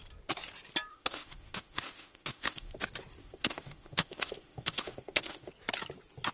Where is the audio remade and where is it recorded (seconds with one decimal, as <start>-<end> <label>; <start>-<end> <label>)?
0.0-0.9 recorded; 0.9-2.8 remade; 2.8-3.2 recorded; 3.2-5.5 remade; 5.5-6.3 recorded